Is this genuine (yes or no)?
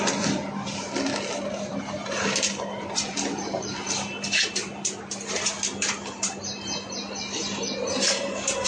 yes